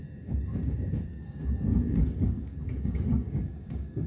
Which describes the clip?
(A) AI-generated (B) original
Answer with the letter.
A